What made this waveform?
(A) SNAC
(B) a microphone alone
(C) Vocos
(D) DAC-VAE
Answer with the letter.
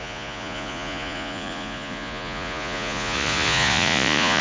C